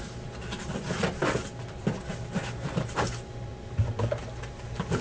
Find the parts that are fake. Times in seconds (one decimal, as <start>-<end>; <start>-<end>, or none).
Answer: none